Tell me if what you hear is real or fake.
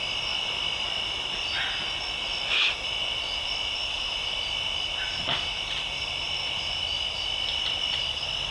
real